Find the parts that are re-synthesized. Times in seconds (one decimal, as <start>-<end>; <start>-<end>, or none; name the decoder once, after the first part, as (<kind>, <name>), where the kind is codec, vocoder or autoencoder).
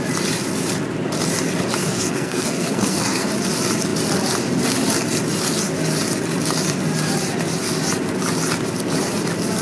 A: 1.8-3.3 (codec, SNAC)